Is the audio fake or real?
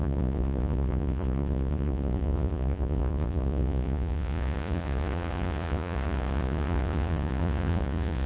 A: fake